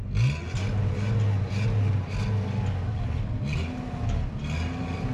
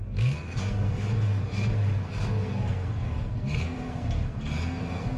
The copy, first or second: second